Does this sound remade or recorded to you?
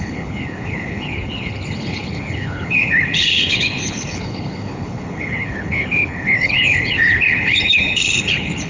remade